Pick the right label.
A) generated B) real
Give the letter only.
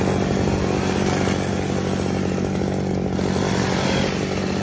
B